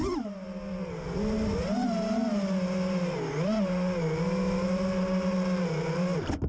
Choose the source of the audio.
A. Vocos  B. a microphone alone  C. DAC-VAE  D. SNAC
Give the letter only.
B